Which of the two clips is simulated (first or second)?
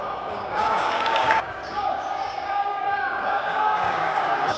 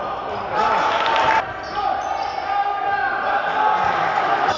first